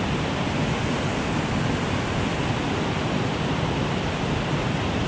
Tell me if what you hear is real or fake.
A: real